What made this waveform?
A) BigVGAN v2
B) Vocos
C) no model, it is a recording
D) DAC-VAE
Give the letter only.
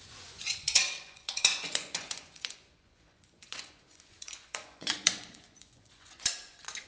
B